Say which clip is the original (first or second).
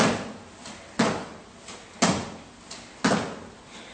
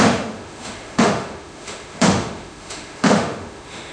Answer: first